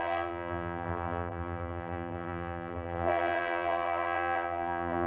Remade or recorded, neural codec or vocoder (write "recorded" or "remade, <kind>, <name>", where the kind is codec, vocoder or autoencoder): remade, vocoder, BigVGAN v2